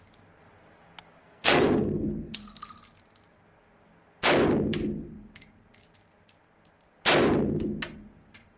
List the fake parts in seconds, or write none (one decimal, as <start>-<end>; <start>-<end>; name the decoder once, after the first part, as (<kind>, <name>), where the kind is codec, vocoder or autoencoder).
1.2-2.6 (codec, SNAC)